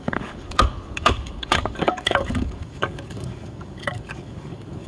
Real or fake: fake